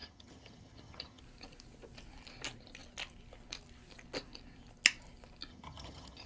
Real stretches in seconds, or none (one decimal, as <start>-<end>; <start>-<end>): 1.2-5.5